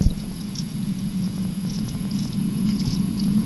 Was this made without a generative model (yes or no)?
no